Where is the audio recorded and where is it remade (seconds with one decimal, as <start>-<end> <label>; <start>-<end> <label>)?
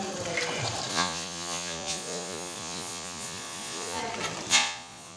0.0-0.9 recorded; 0.9-4.0 remade; 4.0-4.5 recorded; 4.5-5.2 remade